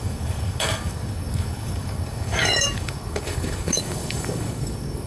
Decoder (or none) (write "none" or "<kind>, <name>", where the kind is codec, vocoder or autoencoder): codec, DAC